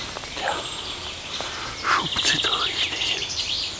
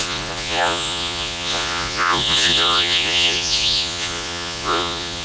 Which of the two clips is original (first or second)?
first